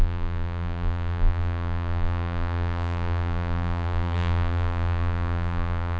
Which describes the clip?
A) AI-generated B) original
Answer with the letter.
A